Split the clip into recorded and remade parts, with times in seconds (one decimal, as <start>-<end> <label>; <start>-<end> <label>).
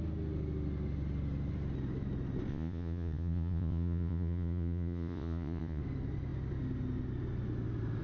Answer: 0.0-2.5 recorded; 2.5-5.8 remade; 5.8-8.0 recorded